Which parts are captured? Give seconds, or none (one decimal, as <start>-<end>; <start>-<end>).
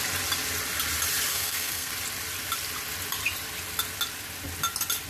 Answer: 0.0-1.3; 1.9-5.1